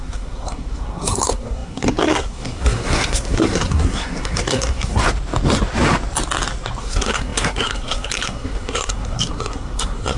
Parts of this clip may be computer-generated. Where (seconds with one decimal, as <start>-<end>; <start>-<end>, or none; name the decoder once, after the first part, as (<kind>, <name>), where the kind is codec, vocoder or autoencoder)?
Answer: 0.0-5.0 (codec, SNAC); 6.8-10.2